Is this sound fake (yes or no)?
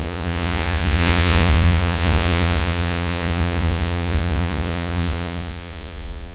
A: yes